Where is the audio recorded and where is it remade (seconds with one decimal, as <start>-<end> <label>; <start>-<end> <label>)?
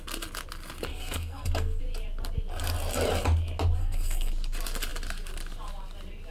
0.0-0.9 recorded; 0.9-1.8 remade; 1.8-3.8 recorded; 3.8-4.3 remade; 4.3-6.3 recorded